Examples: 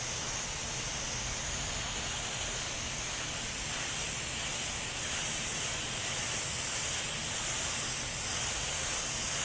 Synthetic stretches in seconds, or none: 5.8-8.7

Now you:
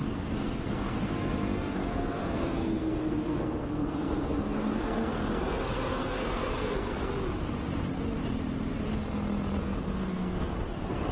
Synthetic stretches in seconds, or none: 0.0-7.1; 9.6-11.1

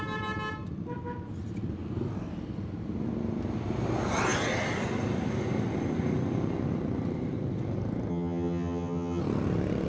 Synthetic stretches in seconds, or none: 8.1-9.2

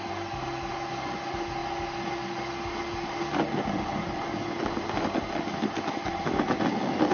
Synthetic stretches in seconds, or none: none

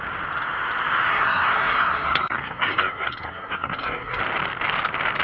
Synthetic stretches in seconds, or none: 1.1-4.2

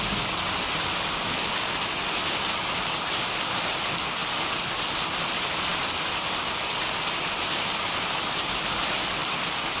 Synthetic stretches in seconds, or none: none

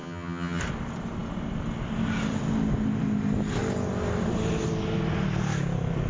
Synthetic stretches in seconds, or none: 0.0-0.6